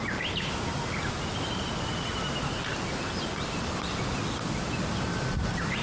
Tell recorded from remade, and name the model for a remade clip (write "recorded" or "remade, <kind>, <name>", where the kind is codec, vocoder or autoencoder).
recorded